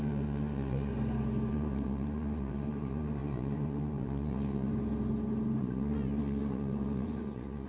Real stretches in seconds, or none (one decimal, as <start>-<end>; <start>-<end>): 0.9-1.5; 4.7-5.6